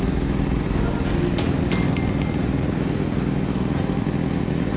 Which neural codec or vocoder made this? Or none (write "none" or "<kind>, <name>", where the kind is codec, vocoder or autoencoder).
none